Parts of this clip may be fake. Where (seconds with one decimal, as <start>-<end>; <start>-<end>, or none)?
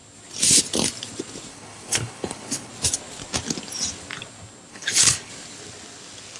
1.5-2.7; 4.7-5.3